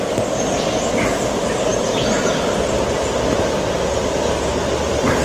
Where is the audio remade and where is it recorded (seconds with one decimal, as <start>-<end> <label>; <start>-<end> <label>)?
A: 0.0-1.7 recorded; 1.7-2.3 remade; 2.3-5.2 recorded